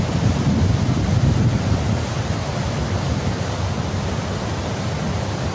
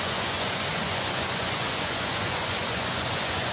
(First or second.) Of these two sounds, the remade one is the second